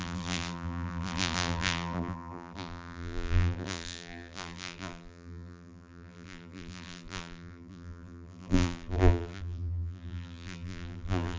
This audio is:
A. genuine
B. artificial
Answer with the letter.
B